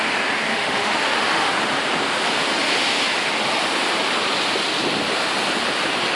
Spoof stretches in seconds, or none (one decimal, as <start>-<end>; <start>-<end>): 0.5-1.5